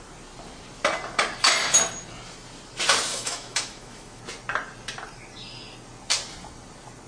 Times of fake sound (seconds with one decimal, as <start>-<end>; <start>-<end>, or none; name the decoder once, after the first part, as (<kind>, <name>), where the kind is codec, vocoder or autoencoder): 3.1-4.2 (autoencoder, DAC-VAE)